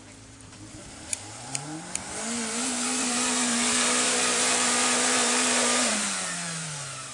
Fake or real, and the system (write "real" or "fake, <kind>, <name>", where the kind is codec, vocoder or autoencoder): fake, vocoder, BigVGAN v2